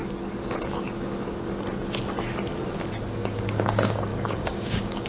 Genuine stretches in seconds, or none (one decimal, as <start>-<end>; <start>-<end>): 0.0-3.1